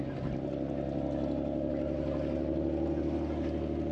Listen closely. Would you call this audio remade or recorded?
recorded